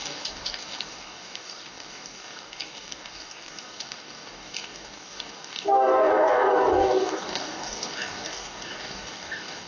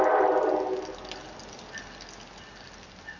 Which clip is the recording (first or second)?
second